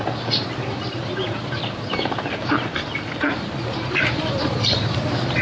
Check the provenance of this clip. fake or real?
fake